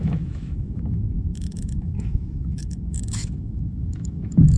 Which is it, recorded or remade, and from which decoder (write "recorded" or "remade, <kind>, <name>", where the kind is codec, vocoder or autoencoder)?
remade, autoencoder, DAC-VAE